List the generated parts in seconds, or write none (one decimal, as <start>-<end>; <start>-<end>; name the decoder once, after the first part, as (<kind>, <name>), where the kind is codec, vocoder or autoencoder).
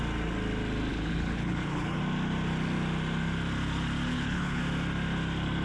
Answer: 0.9-2.0 (codec, HILCodec); 4.1-4.6